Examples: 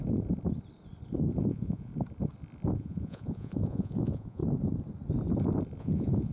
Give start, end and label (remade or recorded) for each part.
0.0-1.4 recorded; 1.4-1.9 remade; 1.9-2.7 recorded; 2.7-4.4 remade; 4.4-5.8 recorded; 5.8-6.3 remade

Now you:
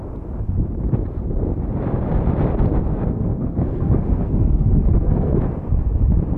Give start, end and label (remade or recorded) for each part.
0.0-2.9 recorded; 2.9-5.4 remade; 5.4-6.4 recorded

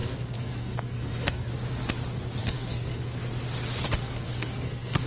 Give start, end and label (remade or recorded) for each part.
0.0-1.5 remade; 1.5-2.4 recorded; 2.4-3.0 remade; 3.0-4.0 recorded; 4.0-5.1 remade

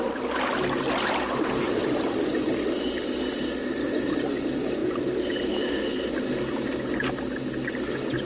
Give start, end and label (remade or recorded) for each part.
0.0-8.2 recorded

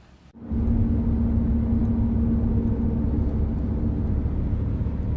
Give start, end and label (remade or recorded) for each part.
0.0-5.2 recorded